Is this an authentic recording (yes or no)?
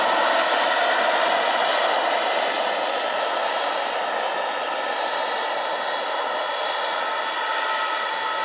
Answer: yes